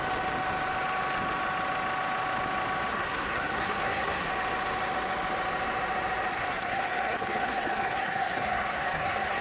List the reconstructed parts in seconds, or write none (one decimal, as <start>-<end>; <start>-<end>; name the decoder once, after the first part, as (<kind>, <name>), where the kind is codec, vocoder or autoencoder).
2.9-4.3 (codec, SNAC); 6.3-9.4